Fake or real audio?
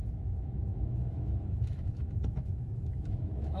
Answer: fake